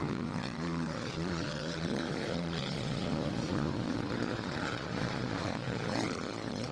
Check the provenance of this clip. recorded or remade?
remade